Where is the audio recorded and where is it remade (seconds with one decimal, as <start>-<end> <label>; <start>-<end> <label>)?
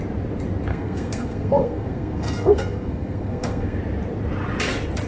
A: 0.0-0.7 recorded; 0.7-3.8 remade; 3.8-5.1 recorded